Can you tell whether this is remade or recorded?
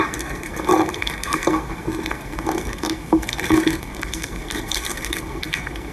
remade